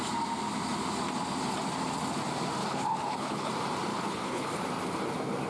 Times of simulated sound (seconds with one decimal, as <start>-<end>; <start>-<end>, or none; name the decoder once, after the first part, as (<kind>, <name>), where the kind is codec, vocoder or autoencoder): 2.6-3.5 (codec, HILCodec); 3.9-4.5